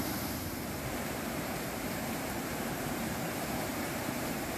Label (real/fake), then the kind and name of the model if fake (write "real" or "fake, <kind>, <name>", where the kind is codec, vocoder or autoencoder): fake, vocoder, BigVGAN v2